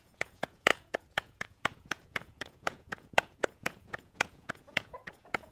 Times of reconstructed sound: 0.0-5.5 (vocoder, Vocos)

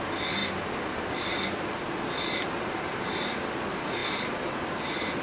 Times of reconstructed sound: none

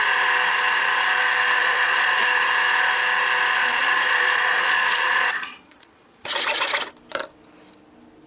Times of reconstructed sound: 1.6-2.2 (vocoder, Vocos); 3.6-6.4

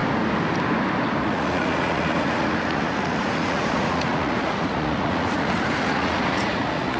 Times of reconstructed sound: 1.2-7.0 (vocoder, Vocos)

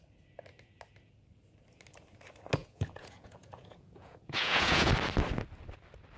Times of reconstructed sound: 2.6-4.9 (vocoder, Vocos)

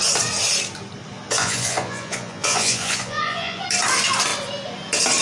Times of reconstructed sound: 1.3-3.6 (vocoder, Vocos)

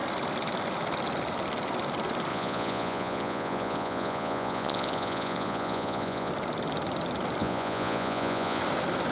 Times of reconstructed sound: 2.3-6.3 (vocoder, Vocos); 7.4-8.6